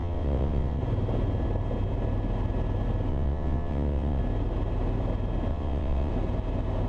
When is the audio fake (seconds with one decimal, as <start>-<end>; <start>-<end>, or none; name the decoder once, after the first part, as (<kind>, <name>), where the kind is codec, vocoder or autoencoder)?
0.0-0.8 (vocoder, WaveNeXt); 3.1-4.2; 5.5-6.1